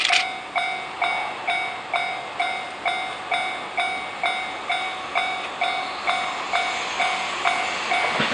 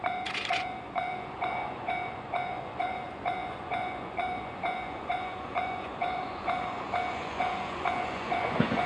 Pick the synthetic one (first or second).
second